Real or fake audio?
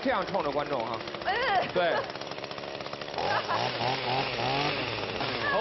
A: real